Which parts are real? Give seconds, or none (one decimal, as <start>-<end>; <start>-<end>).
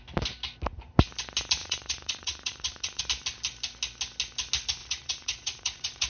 0.0-1.6; 3.0-4.8